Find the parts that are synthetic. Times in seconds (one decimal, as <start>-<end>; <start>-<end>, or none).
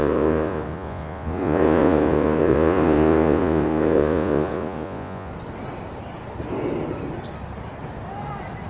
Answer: 0.0-5.3